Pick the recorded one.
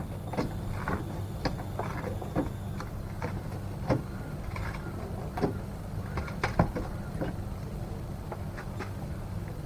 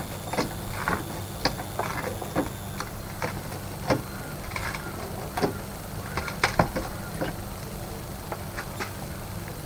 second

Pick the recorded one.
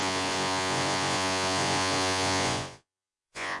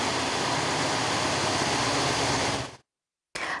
second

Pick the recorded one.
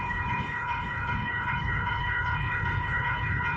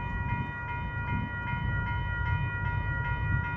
second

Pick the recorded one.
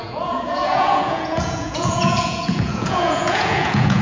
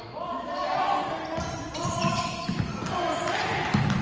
second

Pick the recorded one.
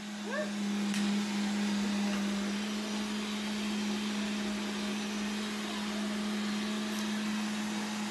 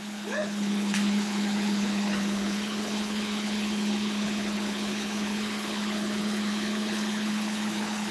first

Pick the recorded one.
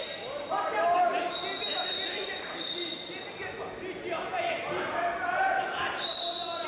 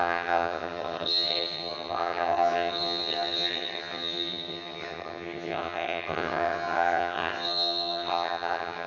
first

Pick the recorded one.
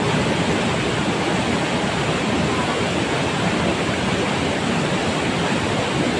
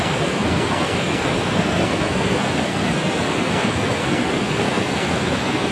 first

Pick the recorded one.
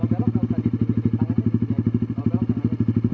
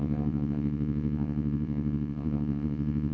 first